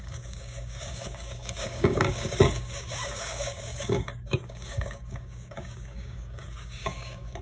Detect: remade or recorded remade